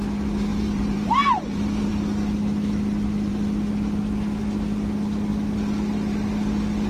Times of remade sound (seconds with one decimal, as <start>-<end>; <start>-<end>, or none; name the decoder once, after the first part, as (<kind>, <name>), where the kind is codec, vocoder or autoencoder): 0.5-1.9 (vocoder, BigVGAN v2)

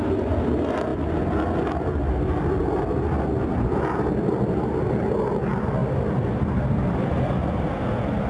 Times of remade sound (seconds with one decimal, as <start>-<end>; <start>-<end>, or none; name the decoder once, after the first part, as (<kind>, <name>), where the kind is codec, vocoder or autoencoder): none